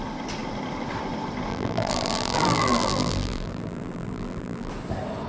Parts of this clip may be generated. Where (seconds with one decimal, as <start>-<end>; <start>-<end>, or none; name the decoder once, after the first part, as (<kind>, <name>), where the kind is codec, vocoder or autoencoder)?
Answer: 1.5-4.7 (vocoder, BigVGAN v2)